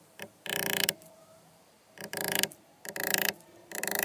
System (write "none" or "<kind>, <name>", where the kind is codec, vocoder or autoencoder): vocoder, BigVGAN v2